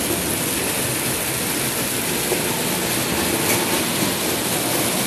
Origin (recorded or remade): recorded